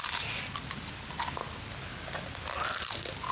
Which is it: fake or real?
real